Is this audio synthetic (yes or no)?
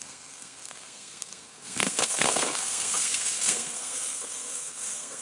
yes